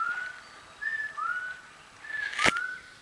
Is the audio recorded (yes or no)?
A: yes